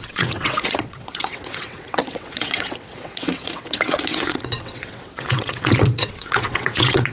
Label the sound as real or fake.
fake